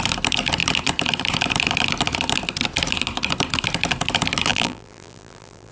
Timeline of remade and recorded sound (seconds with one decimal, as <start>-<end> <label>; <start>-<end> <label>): 0.0-4.5 recorded; 4.5-5.7 remade